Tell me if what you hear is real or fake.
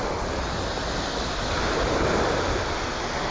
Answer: real